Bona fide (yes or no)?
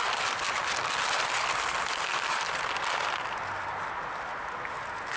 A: yes